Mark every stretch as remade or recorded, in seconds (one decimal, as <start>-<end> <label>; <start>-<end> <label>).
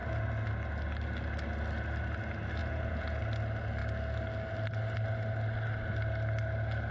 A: 0.0-2.6 recorded; 2.6-3.2 remade; 3.2-6.9 recorded